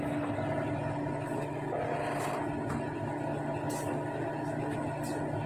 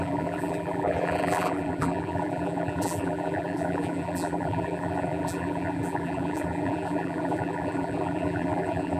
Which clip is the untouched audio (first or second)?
first